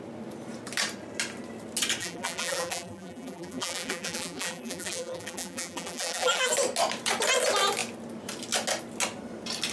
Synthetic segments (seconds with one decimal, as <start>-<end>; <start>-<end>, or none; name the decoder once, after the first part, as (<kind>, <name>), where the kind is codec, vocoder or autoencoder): 2.0-6.5 (vocoder, BigVGAN v2)